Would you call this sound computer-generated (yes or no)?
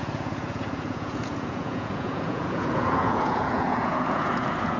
yes